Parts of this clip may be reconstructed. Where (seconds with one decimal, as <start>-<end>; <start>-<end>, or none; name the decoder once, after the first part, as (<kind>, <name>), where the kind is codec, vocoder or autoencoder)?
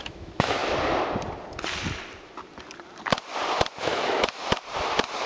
0.0-0.6 (autoencoder, DAC-VAE); 3.8-4.4